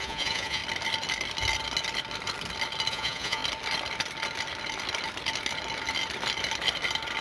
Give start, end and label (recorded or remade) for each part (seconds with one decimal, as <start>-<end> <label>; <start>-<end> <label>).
0.0-0.6 remade; 0.6-2.9 recorded; 2.9-3.4 remade; 3.4-7.2 recorded